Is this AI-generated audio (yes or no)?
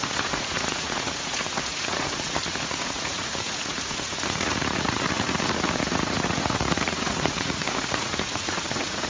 yes